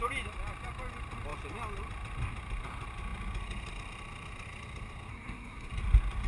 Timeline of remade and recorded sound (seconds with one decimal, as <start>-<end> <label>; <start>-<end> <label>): 0.0-5.1 recorded; 5.1-5.7 remade; 5.7-6.3 recorded